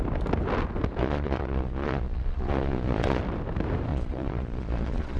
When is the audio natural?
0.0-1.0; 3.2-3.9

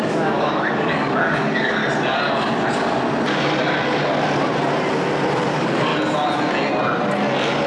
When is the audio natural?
1.8-5.4; 5.9-7.7

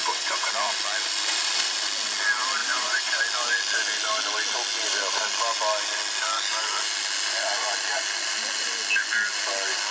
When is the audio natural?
0.5-2.6; 3.2-9.9

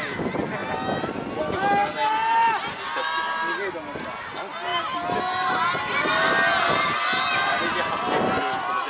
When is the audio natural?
0.0-8.9